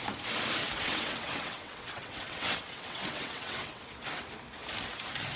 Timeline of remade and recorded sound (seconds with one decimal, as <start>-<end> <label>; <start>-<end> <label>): 0.0-0.6 recorded; 0.6-3.8 remade; 3.8-5.4 recorded